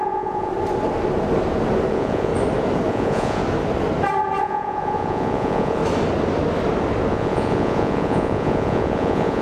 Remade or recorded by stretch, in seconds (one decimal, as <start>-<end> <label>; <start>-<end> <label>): 0.0-0.5 remade; 0.5-1.9 recorded; 1.9-2.3 remade; 2.3-2.9 recorded; 2.9-3.4 remade; 3.4-4.4 recorded; 4.4-5.8 remade; 5.8-7.1 recorded; 7.1-9.4 remade